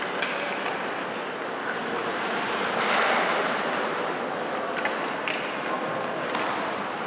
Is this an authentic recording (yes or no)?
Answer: yes